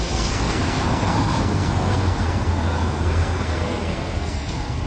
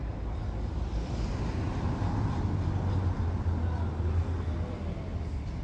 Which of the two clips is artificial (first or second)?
first